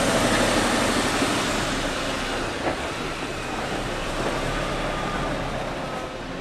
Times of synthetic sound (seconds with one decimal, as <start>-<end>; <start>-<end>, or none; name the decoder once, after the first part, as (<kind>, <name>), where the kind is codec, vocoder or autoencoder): 3.3-5.2 (vocoder, BigVGAN v2)